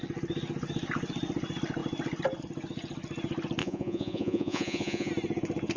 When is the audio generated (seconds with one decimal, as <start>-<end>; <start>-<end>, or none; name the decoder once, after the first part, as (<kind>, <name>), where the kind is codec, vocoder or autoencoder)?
3.6-5.1 (vocoder, Vocos)